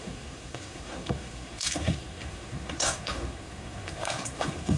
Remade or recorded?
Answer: remade